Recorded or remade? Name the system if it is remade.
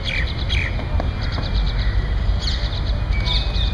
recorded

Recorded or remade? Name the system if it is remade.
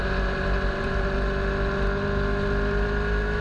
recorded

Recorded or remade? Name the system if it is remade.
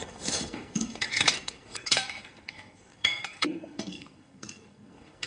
remade, codec, SNAC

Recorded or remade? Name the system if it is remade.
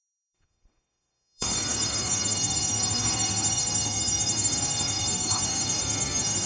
remade, codec, SNAC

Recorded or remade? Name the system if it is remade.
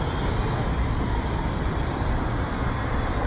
recorded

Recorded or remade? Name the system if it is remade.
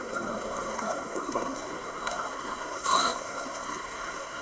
remade, codec, SNAC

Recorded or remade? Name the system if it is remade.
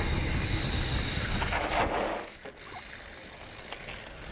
recorded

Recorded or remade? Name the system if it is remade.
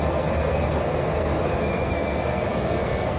remade, codec, SNAC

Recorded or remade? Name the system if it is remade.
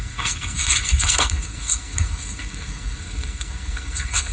remade, codec, SNAC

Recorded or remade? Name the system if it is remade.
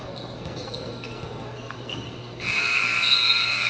remade, codec, SNAC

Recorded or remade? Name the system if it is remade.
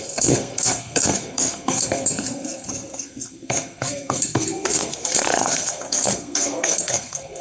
remade, codec, SNAC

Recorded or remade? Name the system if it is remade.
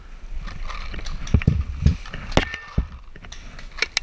recorded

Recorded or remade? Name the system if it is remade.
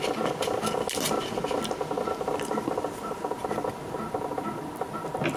recorded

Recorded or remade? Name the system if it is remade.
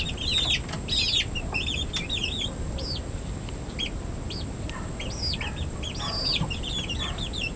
recorded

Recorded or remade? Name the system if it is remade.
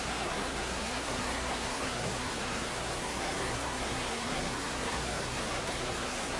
remade, codec, SNAC